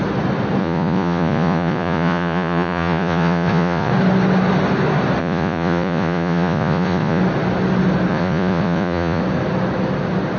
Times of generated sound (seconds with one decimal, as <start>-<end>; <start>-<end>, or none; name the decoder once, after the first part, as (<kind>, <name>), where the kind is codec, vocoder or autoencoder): 0.6-3.9 (vocoder, Vocos); 5.2-7.2; 8.1-9.2